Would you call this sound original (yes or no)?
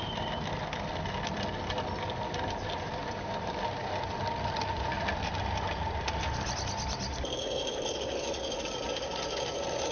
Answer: yes